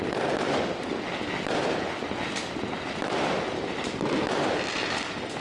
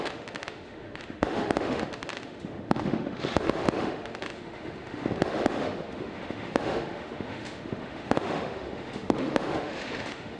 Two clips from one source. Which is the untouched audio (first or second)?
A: first